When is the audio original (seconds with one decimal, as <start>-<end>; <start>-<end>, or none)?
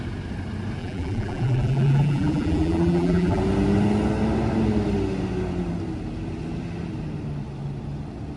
0.0-0.8; 3.4-8.4